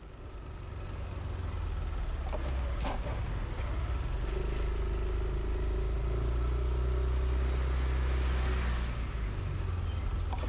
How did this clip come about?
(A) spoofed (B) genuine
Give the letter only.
B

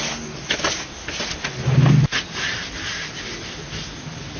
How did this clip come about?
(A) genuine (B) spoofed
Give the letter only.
A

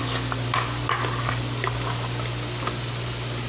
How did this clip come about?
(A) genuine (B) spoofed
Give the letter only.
A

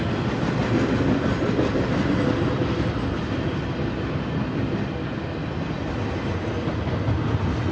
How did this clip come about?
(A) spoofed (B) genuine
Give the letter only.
B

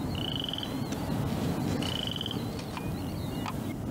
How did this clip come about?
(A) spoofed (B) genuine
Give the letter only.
B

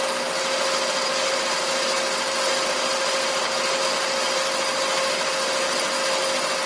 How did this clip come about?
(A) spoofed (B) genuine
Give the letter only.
B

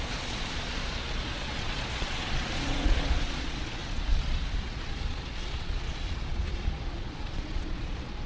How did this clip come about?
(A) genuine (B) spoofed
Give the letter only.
B